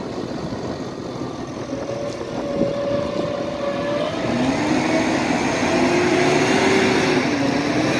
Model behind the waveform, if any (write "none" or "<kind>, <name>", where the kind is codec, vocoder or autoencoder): none